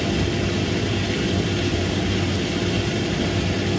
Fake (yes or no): no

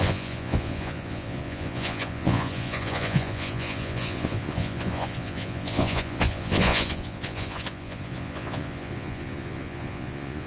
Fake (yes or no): yes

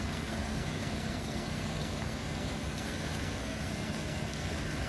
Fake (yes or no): yes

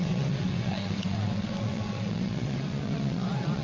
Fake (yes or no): yes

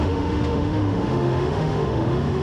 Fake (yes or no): yes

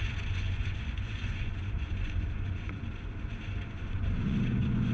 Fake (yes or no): yes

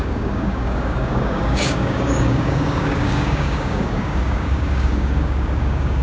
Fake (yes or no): yes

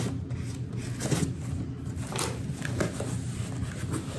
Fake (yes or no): no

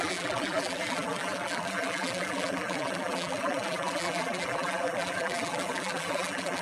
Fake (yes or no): yes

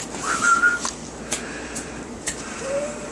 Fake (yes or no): yes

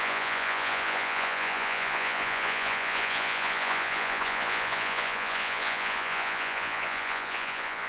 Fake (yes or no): yes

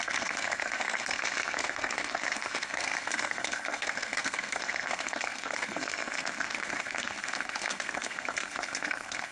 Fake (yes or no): yes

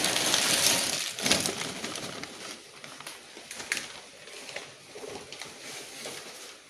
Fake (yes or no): no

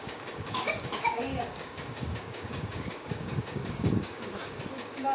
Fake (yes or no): yes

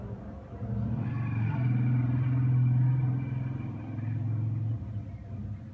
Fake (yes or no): no